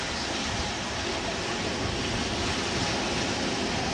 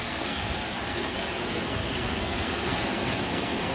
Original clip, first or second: first